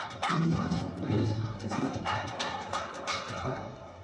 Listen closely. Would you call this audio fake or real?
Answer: fake